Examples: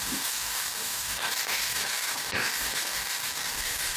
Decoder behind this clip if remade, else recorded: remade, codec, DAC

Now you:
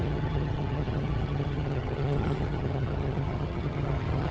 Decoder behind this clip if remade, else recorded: remade, vocoder, HiFi-GAN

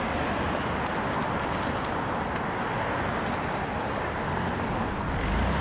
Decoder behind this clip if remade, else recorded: recorded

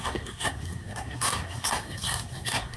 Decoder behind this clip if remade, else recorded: remade, codec, SNAC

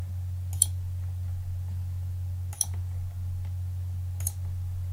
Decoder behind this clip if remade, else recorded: recorded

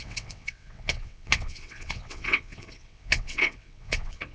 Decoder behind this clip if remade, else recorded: remade, vocoder, WaveNeXt